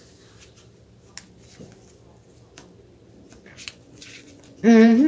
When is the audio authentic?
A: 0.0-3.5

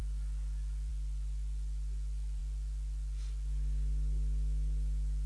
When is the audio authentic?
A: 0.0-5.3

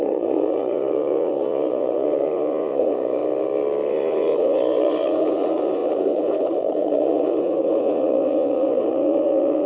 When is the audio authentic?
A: 3.2-3.9